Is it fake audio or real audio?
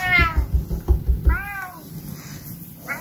real